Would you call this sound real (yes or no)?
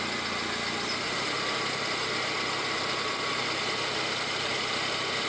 yes